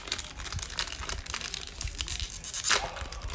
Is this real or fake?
real